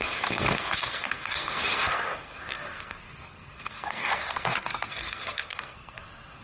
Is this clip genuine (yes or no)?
no